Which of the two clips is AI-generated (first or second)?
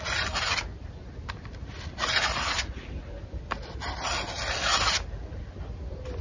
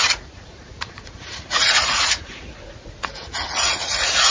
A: second